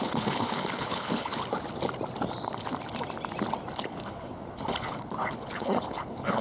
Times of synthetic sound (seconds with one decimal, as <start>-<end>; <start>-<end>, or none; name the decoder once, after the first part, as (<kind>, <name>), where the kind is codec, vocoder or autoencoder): 0.0-1.3 (codec, HILCodec); 3.8-6.4